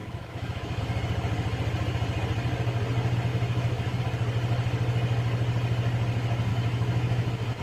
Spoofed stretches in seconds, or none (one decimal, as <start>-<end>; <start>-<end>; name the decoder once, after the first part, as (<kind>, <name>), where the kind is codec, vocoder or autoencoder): 0.0-0.8 (autoencoder, DAC-VAE); 3.3-4.0; 6.5-7.6